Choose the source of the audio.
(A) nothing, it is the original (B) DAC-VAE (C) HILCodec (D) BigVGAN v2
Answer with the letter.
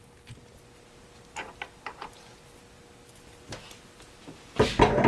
A